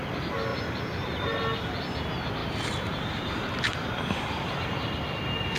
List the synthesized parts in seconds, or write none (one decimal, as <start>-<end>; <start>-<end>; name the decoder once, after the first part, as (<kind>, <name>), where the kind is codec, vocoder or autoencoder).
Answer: 0.5-1.4 (vocoder, BigVGAN v2); 2.4-5.0